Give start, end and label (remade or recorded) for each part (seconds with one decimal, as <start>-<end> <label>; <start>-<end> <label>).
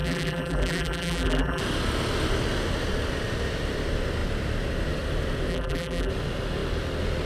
0.0-1.6 remade; 1.6-5.5 recorded; 5.5-6.1 remade; 6.1-7.3 recorded